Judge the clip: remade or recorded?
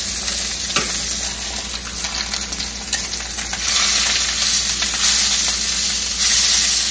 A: recorded